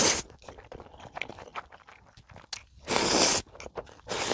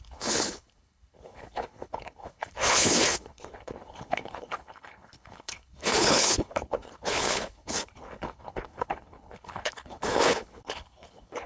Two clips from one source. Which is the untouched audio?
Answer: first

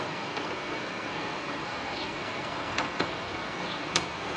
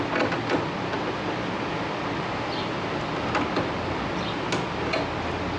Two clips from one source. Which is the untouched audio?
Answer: second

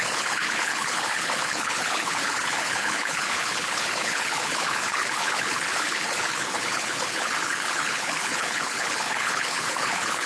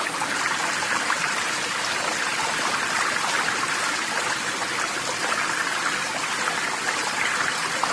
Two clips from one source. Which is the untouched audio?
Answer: second